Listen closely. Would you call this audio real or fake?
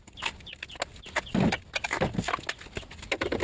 real